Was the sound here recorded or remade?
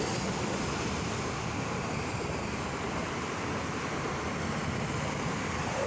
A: recorded